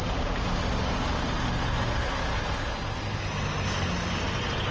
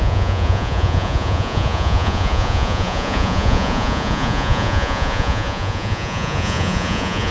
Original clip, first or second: first